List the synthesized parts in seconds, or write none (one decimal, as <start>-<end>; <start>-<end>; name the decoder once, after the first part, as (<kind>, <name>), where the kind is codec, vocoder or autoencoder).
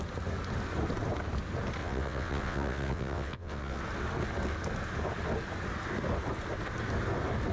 1.8-3.8 (vocoder, WaveNeXt)